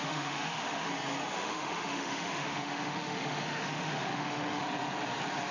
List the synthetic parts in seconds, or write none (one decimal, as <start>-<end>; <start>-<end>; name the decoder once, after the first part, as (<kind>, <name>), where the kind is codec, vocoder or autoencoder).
0.0-0.9 (autoencoder, DAC-VAE); 1.3-4.6